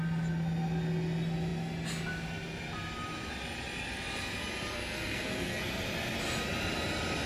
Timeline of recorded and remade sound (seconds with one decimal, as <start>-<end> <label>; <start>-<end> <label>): 0.0-4.7 recorded; 4.7-5.6 remade; 5.6-7.3 recorded